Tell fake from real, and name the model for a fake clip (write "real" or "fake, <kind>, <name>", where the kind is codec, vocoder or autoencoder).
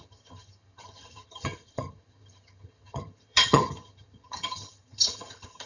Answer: fake, vocoder, HiFi-GAN